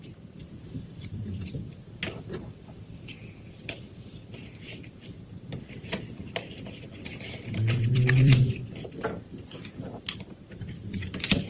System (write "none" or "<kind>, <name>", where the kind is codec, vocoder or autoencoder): vocoder, BigVGAN v2